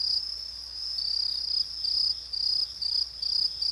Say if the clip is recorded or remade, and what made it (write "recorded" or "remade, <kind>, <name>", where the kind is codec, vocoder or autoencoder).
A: recorded